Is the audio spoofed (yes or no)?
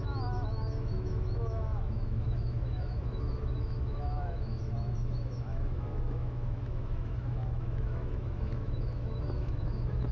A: yes